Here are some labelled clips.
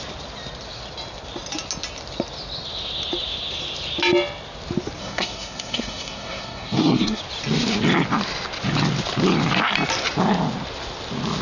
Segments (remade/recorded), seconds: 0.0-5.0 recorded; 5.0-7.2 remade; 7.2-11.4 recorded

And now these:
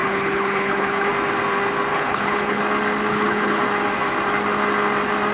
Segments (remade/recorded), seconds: 0.0-1.1 remade; 1.1-1.9 recorded; 1.9-2.6 remade; 2.6-3.1 recorded; 3.1-3.6 remade; 3.6-5.3 recorded